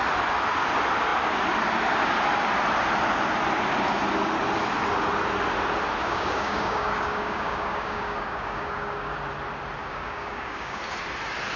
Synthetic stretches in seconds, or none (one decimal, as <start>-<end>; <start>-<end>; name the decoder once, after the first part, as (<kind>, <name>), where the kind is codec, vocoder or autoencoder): 6.0-9.1 (codec, DAC); 9.8-10.8